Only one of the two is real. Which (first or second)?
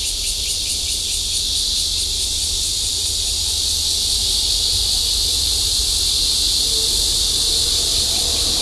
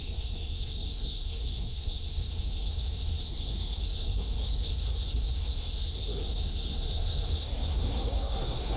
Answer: first